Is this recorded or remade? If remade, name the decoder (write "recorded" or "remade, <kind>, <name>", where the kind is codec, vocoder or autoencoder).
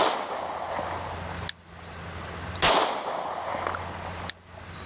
recorded